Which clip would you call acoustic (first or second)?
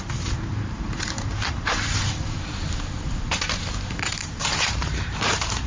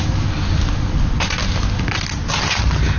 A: second